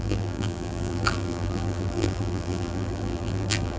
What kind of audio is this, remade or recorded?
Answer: remade